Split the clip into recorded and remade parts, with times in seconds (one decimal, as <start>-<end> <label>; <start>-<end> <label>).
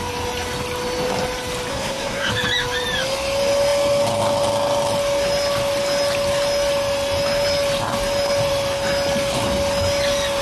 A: 0.0-1.7 recorded; 1.7-2.3 remade; 2.3-10.4 recorded